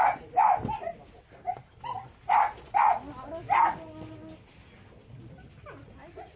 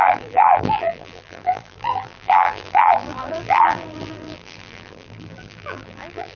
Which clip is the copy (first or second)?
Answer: second